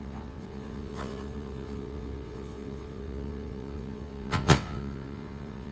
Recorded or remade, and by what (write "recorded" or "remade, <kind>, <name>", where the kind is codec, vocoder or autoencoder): remade, vocoder, WaveNeXt